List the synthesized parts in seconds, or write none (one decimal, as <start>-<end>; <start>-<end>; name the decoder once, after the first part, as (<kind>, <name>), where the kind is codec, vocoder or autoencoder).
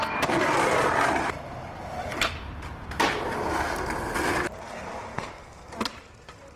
5.1-5.7 (codec, SNAC)